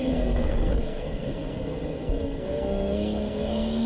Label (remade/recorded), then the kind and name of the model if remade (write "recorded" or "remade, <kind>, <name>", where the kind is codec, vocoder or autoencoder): remade, codec, SNAC